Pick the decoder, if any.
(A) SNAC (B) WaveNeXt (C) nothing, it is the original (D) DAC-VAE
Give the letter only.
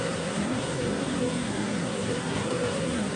A